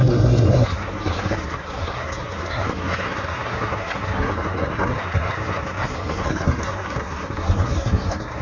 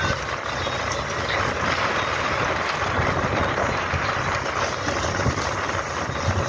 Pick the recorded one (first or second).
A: second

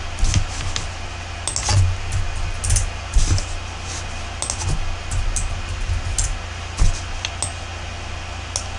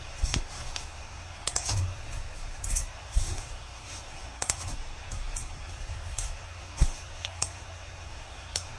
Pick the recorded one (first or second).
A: first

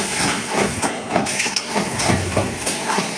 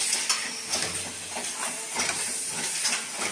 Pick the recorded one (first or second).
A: second